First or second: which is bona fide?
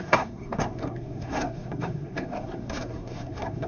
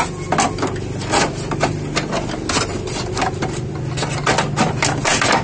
second